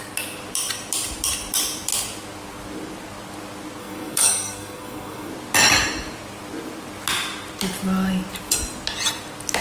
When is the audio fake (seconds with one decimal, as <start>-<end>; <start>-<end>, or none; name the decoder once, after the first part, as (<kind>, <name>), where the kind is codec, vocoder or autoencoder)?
3.8-5.3 (codec, SNAC)